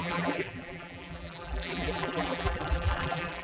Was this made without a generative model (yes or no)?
no